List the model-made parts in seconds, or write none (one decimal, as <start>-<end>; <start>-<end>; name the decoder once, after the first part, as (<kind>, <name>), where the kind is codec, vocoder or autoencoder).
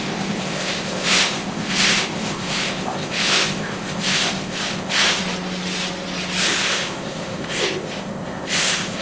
0.0-5.2 (codec, ZipCodec); 6.4-9.0